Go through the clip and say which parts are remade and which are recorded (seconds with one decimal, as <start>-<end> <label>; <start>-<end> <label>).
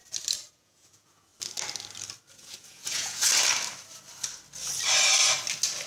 0.0-0.5 recorded; 0.5-1.3 remade; 1.3-2.3 recorded; 2.3-3.3 remade; 3.3-5.9 recorded